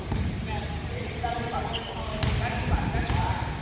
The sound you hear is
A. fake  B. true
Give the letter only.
B